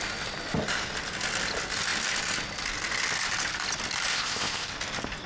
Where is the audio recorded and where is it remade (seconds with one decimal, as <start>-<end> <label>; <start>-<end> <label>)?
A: 0.0-4.1 recorded; 4.1-4.7 remade; 4.7-5.3 recorded